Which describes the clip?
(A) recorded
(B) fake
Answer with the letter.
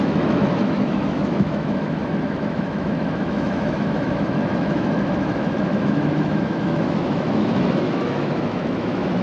B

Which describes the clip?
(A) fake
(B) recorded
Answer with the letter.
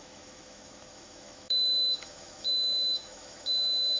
A